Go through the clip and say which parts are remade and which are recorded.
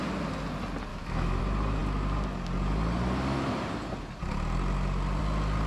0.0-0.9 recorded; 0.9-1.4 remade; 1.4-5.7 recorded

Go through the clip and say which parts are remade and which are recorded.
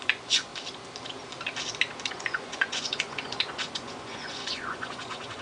0.0-0.5 remade; 0.5-2.1 recorded; 2.1-5.4 remade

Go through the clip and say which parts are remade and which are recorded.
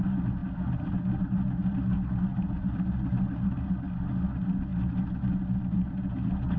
0.0-6.6 recorded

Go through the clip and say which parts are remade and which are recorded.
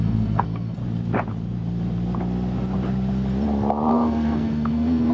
0.0-0.8 remade; 0.8-3.9 recorded; 3.9-5.1 remade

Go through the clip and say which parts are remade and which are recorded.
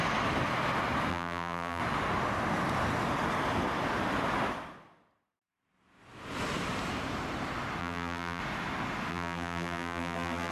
0.0-1.1 recorded; 1.1-1.8 remade; 1.8-7.8 recorded; 7.8-8.4 remade; 8.4-9.1 recorded; 9.1-10.5 remade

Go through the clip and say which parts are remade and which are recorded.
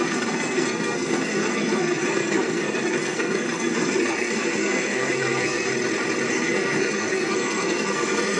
0.0-5.7 remade; 5.7-6.3 recorded; 6.3-8.4 remade